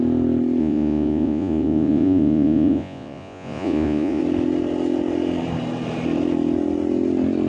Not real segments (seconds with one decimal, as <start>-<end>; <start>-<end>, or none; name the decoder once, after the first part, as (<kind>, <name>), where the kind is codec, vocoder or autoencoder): 0.6-4.2 (vocoder, Vocos)